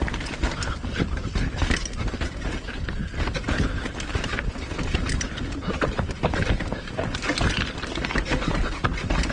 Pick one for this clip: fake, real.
real